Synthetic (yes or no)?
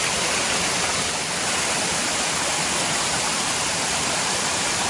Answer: no